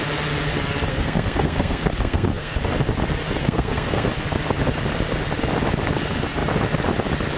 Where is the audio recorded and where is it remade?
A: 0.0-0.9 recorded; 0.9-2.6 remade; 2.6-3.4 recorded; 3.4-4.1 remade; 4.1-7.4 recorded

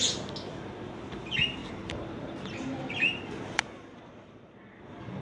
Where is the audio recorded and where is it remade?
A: 0.0-1.6 recorded; 1.6-3.6 remade; 3.6-5.2 recorded

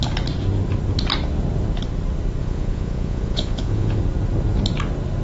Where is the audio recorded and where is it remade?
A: 0.0-2.4 recorded; 2.4-4.0 remade; 4.0-5.2 recorded

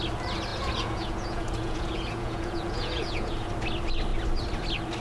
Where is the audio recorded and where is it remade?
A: 0.0-0.5 recorded; 0.5-3.5 remade; 3.5-5.0 recorded

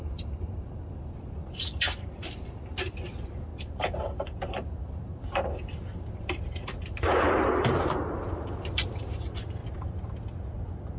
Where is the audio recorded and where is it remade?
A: 0.0-9.6 remade; 9.6-11.0 recorded

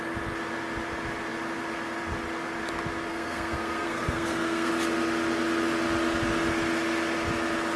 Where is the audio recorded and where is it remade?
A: 0.0-3.1 recorded; 3.1-4.7 remade; 4.7-7.8 recorded

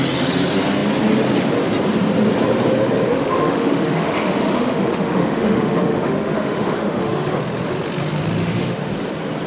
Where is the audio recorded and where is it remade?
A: 0.0-3.1 recorded; 3.1-7.4 remade; 7.4-8.4 recorded; 8.4-8.9 remade; 8.9-9.5 recorded